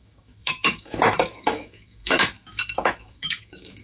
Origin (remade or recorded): remade